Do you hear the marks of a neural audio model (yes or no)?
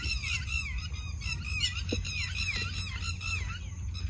no